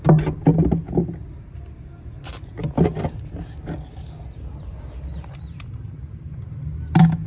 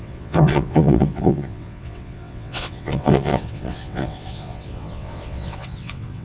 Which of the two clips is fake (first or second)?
second